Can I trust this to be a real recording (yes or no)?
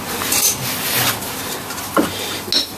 yes